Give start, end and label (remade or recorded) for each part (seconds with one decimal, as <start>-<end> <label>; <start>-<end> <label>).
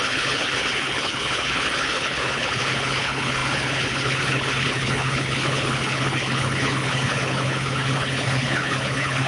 0.0-9.3 remade